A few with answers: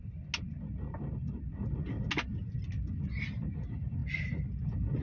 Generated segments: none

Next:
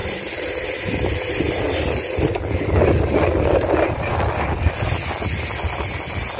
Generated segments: 0.0-1.9 (vocoder, BigVGAN v2)

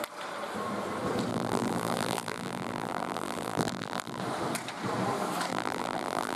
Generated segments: 1.3-4.2 (vocoder, BigVGAN v2); 5.5-6.4